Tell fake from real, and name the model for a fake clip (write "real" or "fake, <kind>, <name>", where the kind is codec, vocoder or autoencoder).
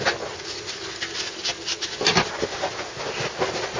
real